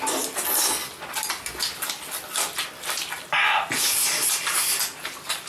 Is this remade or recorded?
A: recorded